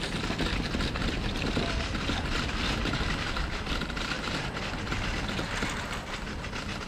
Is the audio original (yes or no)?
yes